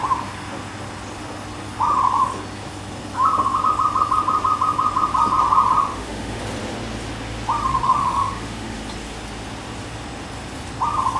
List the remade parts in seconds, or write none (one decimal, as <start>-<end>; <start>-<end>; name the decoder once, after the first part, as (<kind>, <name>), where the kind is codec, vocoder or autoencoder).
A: 5.8-6.4 (autoencoder, DAC-VAE); 7.7-8.8